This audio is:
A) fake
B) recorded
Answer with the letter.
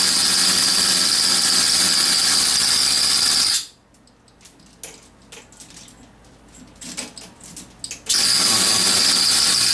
B